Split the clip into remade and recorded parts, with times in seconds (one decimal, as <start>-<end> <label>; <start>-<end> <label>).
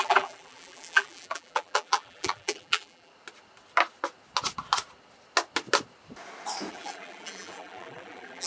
0.0-3.1 remade; 3.1-6.7 recorded; 6.7-8.5 remade